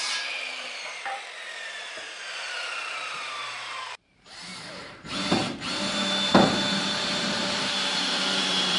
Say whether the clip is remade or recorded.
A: remade